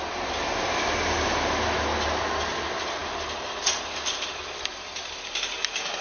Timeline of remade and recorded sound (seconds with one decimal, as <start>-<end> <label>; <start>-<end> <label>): 0.0-6.0 recorded